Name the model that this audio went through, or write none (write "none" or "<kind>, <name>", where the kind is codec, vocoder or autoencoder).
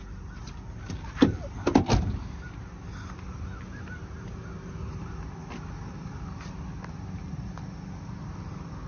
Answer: none